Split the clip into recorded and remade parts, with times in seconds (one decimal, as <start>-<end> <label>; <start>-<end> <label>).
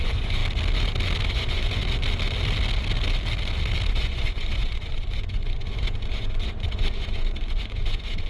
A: 0.0-0.4 remade; 0.4-1.3 recorded; 1.3-1.8 remade; 1.8-3.9 recorded; 3.9-8.3 remade